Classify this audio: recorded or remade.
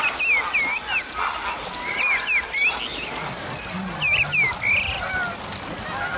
recorded